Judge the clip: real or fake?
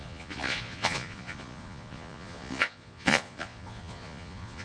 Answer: fake